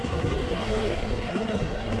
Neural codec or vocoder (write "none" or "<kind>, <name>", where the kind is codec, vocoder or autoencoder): codec, SNAC